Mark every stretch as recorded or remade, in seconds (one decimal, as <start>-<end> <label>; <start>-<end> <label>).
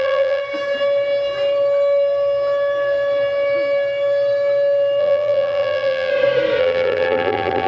0.0-0.4 remade; 0.4-5.0 recorded; 5.0-6.1 remade; 6.1-6.6 recorded; 6.6-7.7 remade